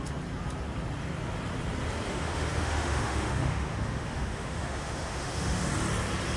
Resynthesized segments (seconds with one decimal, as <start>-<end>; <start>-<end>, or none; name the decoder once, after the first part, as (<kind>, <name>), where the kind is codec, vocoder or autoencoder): 2.1-5.7 (autoencoder, DAC-VAE)